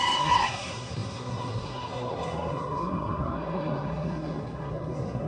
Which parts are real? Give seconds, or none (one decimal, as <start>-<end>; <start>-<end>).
none